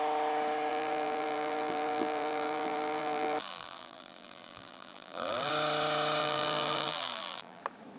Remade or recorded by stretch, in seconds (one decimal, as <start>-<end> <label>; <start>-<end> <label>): 0.0-0.7 recorded; 0.7-5.5 remade; 5.5-6.2 recorded; 6.2-7.6 remade; 7.6-8.0 recorded

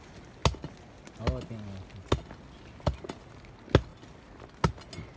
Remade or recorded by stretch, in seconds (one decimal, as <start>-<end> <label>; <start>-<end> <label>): 0.0-5.2 recorded

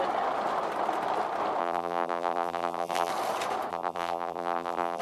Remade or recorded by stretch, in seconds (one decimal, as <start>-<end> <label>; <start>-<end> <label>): 0.0-1.6 recorded; 1.6-3.1 remade; 3.1-3.7 recorded; 3.7-5.0 remade

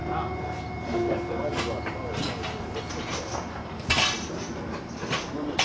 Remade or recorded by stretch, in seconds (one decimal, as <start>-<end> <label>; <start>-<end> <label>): 0.0-5.6 recorded

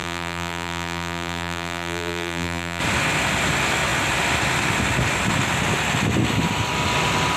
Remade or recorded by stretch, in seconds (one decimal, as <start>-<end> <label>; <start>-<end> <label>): 0.0-2.8 remade; 2.8-7.4 recorded

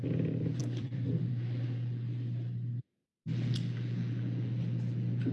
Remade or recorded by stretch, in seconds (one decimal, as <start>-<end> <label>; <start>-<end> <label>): 0.0-0.6 recorded; 0.6-1.3 remade; 1.3-5.3 recorded